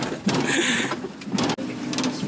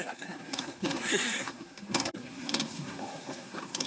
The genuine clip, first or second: first